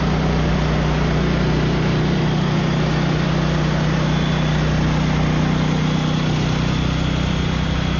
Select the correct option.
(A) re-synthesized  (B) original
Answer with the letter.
B